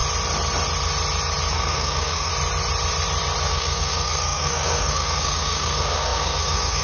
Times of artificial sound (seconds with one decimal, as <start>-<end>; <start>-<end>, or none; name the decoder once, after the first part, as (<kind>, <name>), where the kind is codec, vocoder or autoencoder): 1.5-2.3 (codec, SNAC); 3.5-6.8

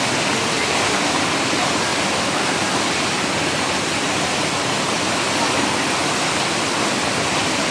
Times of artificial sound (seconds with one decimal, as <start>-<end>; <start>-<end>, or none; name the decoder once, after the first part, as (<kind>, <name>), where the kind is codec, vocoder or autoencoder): none